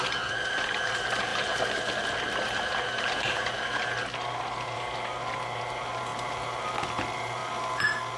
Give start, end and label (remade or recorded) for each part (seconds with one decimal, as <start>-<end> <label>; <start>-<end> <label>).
0.0-1.3 recorded; 1.3-3.6 remade; 3.6-8.2 recorded